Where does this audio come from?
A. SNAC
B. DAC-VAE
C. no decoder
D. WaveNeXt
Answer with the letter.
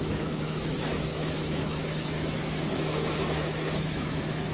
B